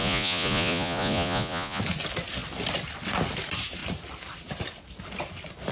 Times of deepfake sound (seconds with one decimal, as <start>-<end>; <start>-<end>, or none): 0.0-1.8